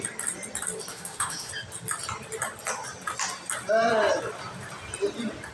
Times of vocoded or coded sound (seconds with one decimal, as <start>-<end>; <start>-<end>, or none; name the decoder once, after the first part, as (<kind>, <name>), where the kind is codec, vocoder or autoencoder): 0.9-1.5 (autoencoder, DAC-VAE)